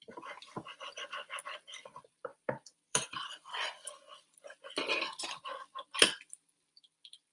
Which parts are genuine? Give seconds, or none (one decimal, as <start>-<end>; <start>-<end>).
0.0-2.3; 4.7-7.3